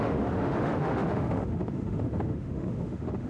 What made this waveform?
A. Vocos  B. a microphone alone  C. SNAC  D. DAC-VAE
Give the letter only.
D